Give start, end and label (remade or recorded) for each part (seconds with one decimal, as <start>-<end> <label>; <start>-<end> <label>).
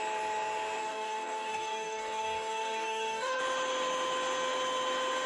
0.0-0.8 recorded; 0.8-3.4 remade; 3.4-5.3 recorded